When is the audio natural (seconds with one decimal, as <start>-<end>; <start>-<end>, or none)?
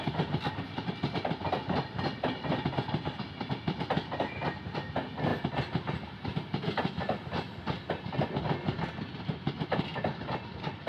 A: 0.0-10.9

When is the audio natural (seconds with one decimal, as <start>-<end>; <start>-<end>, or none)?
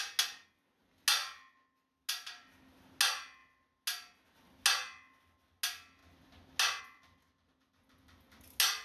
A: 0.0-8.8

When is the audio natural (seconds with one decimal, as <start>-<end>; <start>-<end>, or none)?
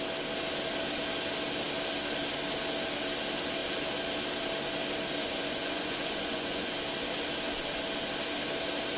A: 0.0-5.2; 6.7-9.0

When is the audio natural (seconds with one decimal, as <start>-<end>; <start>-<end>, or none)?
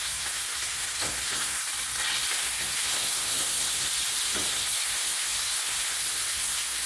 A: 1.6-2.3; 3.9-4.5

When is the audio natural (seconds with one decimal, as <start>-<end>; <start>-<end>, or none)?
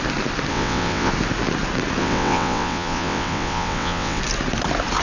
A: 0.0-0.5; 1.1-2.0; 4.2-5.0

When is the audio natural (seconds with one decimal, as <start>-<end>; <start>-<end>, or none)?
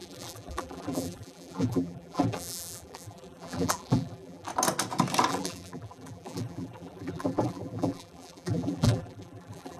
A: 4.5-5.3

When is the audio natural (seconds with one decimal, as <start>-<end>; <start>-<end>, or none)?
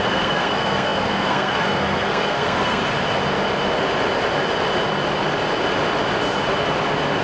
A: 2.8-7.2